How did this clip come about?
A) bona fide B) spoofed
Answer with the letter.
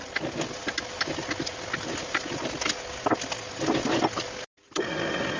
A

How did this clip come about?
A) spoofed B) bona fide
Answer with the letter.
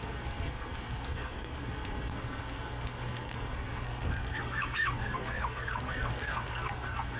A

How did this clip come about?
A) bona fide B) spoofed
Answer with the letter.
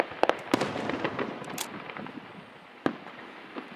A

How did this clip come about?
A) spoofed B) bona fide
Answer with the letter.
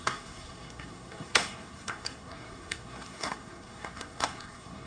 A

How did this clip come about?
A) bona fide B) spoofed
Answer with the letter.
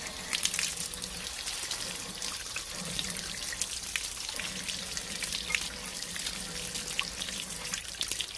A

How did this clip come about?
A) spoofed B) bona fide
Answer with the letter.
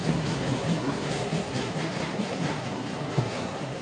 A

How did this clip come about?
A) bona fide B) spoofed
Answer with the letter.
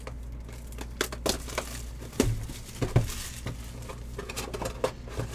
A